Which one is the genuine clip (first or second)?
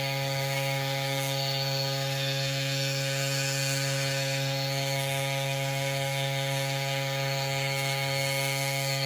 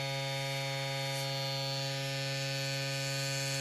second